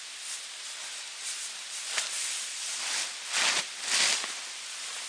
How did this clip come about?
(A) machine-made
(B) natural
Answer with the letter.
B